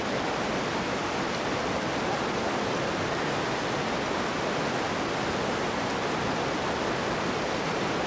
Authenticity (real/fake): real